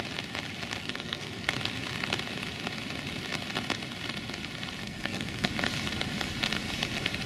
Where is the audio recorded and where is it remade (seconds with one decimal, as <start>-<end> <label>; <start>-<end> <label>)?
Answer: 0.0-0.8 recorded; 0.8-1.5 remade; 1.5-4.8 recorded; 4.8-5.5 remade; 5.5-7.3 recorded